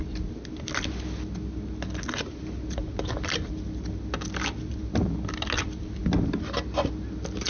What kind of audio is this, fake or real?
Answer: real